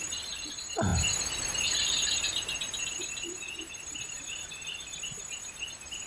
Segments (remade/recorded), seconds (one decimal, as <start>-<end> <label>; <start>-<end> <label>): 0.0-6.1 recorded